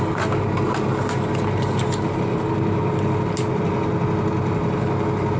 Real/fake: real